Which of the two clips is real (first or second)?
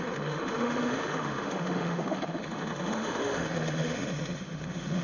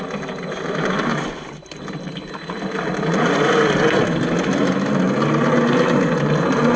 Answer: second